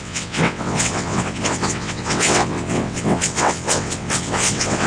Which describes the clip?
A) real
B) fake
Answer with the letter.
B